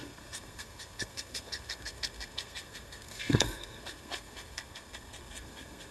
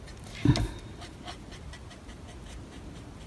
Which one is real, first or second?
second